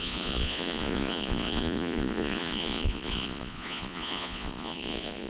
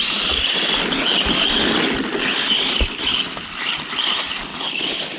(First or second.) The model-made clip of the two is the first